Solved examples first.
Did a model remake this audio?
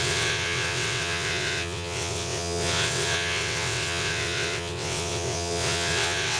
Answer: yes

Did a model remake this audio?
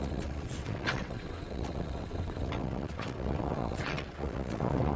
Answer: yes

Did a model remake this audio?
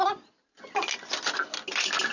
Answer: no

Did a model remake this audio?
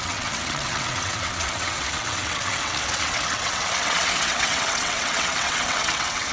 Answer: yes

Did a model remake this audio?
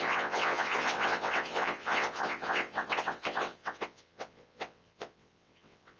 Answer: yes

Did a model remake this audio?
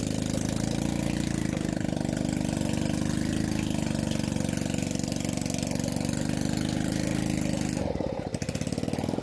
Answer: no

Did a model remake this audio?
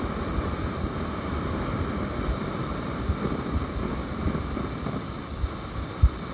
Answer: no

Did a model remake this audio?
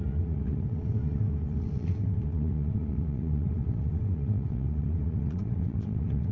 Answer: yes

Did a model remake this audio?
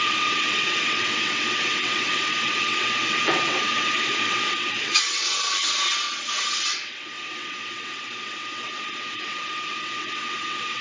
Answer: yes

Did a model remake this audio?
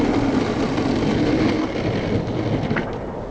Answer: no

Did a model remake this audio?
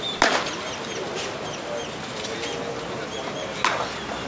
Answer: no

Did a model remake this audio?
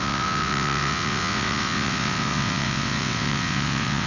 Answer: yes